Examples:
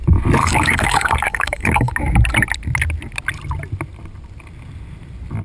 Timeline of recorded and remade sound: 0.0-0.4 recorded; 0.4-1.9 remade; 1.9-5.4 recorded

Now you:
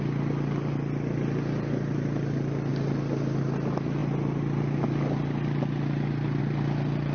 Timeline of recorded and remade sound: 0.0-7.1 recorded

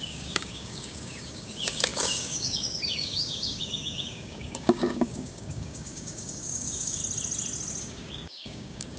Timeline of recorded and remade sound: 0.0-7.0 remade; 7.0-7.8 recorded; 7.8-9.0 remade

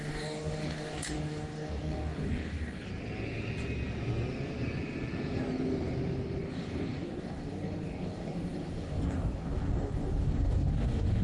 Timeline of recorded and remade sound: 0.0-2.9 remade; 2.9-6.5 recorded; 6.5-11.2 remade

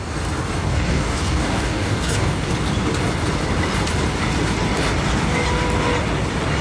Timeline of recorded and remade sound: 0.0-0.6 recorded; 0.6-2.5 remade; 2.5-6.6 recorded

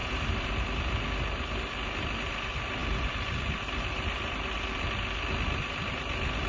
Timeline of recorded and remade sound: 0.0-6.5 recorded